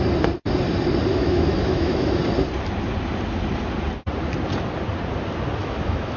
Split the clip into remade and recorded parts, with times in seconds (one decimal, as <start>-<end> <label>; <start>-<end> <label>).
0.0-1.1 recorded; 1.1-2.2 remade; 2.2-5.6 recorded; 5.6-6.2 remade